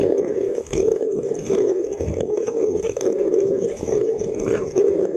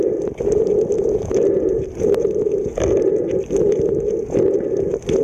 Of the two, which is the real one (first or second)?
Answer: second